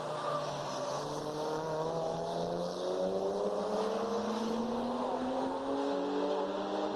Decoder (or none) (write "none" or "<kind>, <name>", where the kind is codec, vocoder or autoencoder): none